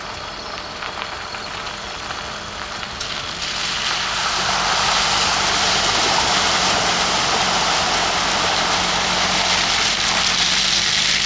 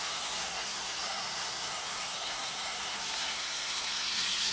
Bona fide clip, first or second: first